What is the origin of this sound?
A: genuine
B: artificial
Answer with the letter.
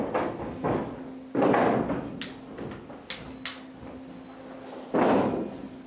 A